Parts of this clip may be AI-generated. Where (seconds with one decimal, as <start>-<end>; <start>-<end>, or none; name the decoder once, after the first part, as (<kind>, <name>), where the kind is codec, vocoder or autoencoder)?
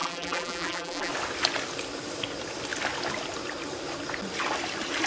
0.0-1.1 (vocoder, BigVGAN v2)